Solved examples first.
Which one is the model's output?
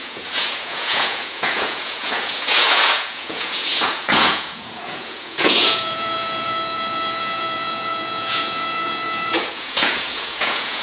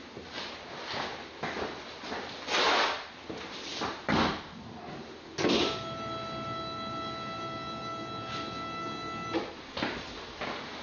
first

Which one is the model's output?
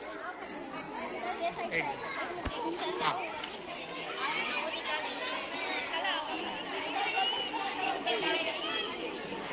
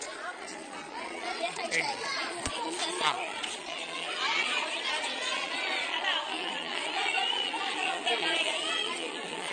second